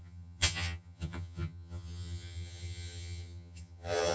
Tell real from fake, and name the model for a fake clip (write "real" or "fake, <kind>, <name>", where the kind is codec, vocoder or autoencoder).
fake, vocoder, HiFi-GAN